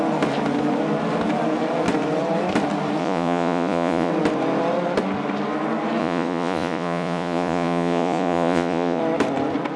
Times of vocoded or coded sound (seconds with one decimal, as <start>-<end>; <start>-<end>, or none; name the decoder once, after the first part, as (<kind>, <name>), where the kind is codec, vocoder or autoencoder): 3.0-4.1 (vocoder, Vocos); 6.0-9.0